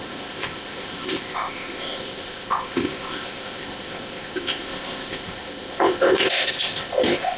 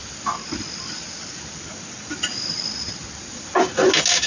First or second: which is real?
second